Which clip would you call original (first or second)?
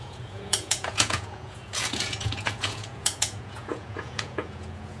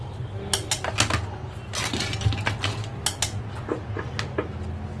second